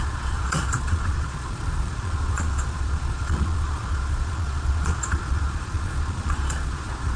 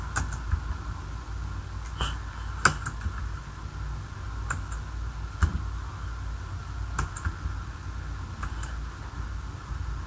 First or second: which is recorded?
second